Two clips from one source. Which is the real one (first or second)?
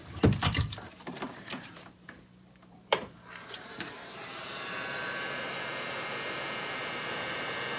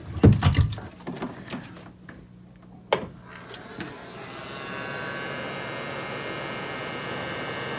second